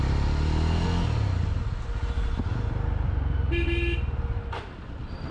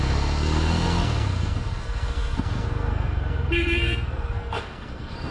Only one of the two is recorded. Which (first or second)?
first